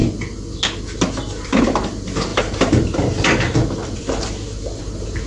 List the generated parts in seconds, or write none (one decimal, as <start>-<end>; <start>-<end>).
none